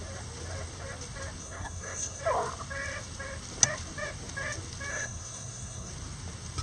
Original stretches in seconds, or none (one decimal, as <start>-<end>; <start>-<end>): 0.0-1.4; 2.2-4.9; 5.9-6.6